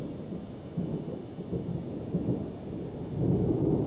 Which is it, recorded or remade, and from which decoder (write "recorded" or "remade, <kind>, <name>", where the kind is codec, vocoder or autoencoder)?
recorded